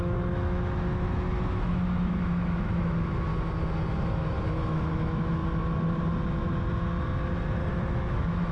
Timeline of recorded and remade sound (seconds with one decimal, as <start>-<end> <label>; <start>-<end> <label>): 0.0-3.3 remade; 3.3-4.1 recorded; 4.1-5.4 remade; 5.4-7.7 recorded; 7.7-8.5 remade